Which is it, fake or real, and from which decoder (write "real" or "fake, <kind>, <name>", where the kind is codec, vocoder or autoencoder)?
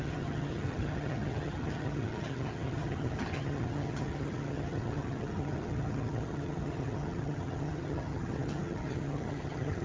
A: fake, vocoder, HiFi-GAN